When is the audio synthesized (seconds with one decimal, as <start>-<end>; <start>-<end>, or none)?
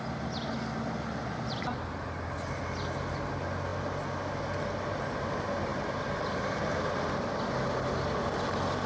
none